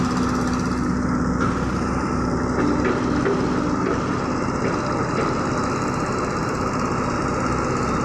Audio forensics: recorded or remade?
remade